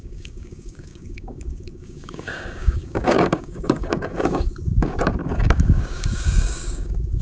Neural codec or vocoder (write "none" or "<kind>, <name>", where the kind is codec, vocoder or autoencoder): codec, DAC